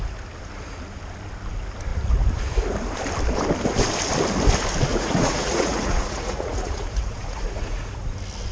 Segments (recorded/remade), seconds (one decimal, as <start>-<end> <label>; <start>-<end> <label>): 0.0-4.9 recorded; 4.9-8.0 remade; 8.0-8.5 recorded